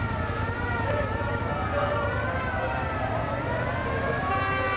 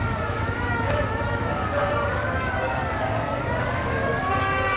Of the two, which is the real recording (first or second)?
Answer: first